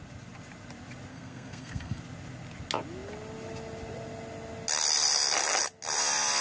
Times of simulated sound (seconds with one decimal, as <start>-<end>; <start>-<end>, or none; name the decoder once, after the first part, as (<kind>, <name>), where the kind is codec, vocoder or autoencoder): 1.1-2.0 (codec, SNAC)